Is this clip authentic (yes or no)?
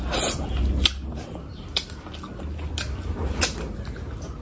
yes